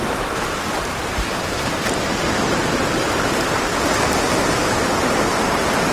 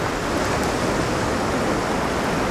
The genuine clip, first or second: second